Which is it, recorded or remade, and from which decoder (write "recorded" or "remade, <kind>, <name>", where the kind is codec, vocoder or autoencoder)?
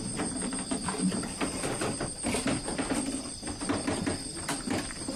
remade, vocoder, BigVGAN v2